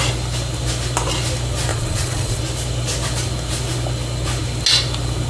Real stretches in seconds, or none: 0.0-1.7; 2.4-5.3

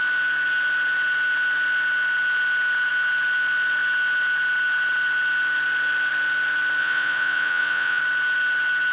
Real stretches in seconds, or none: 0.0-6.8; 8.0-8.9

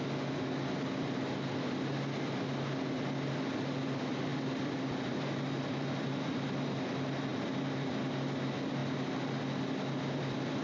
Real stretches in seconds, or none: 0.0-10.6